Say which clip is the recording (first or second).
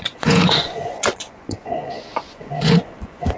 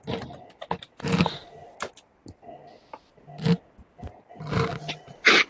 second